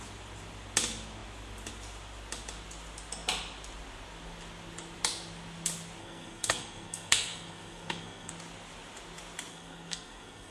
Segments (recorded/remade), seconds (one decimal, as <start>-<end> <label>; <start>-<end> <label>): 0.0-6.0 recorded; 6.0-8.3 remade; 8.3-9.5 recorded; 9.5-10.5 remade